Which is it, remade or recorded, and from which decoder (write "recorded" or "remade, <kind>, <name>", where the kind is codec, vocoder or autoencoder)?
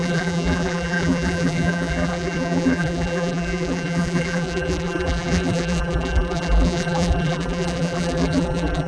remade, vocoder, BigVGAN v2